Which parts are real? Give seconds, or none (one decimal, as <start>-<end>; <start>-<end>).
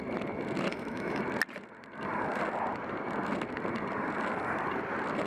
0.0-0.7; 1.2-5.3